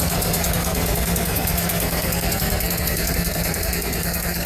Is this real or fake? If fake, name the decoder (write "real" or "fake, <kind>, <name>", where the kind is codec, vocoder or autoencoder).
fake, codec, SNAC